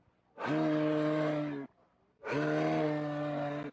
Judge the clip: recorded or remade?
recorded